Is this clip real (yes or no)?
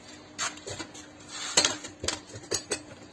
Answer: yes